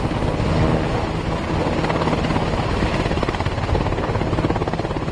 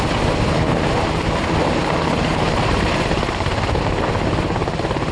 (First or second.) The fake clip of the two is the second